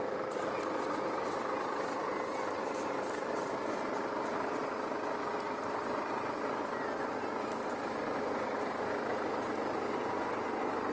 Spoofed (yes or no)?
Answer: no